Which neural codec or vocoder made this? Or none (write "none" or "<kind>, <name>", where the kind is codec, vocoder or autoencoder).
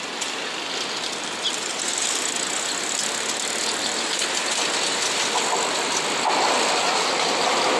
none